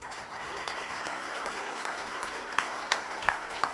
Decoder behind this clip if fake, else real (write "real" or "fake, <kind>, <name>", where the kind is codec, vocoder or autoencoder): fake, codec, SNAC